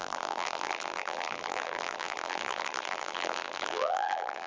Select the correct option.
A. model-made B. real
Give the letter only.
A